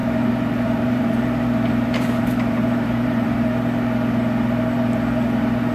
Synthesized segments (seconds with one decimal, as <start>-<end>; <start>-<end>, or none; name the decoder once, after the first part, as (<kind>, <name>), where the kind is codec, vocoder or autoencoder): 0.0-3.4 (vocoder, BigVGAN v2)